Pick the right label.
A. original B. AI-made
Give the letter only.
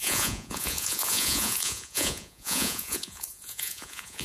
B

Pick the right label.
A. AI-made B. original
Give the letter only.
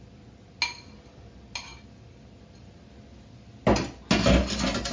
B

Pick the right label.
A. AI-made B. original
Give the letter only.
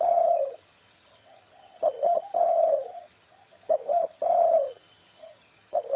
A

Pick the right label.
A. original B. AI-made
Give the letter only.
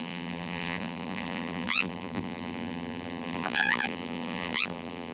B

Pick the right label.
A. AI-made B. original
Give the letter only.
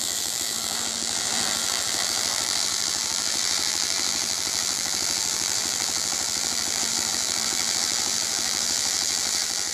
A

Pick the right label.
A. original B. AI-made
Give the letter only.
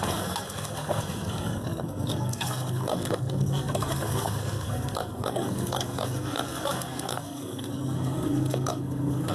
B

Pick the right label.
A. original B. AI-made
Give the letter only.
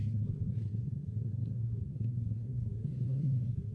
B